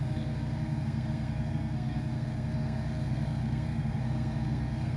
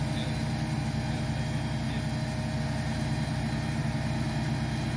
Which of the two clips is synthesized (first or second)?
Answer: first